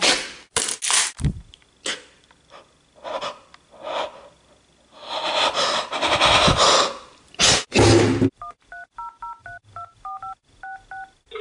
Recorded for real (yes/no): yes